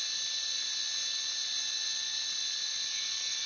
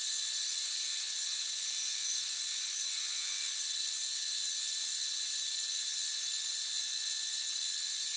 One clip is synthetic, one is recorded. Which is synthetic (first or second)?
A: second